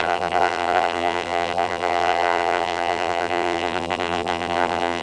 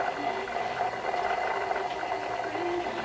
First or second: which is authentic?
second